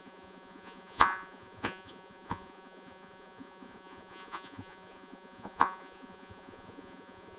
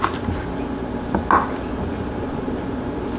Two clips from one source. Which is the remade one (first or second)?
first